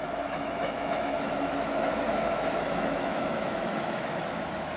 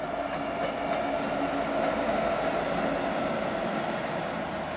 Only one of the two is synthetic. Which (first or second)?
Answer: first